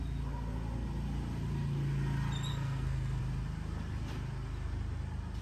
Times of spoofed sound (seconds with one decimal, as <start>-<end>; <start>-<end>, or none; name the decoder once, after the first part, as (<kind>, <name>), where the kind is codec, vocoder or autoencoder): 2.5-3.2 (codec, SNAC)